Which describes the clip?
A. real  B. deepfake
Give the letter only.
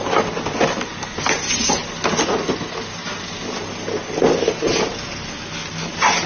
A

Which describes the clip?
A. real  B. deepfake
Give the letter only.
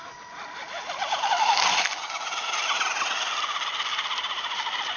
A